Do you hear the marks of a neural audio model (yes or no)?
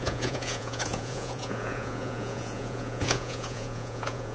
yes